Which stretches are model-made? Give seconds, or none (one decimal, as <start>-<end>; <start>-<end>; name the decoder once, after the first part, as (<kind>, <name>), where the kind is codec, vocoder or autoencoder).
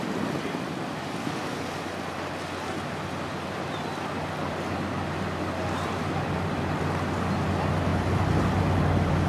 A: none